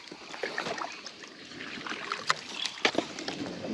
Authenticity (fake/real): real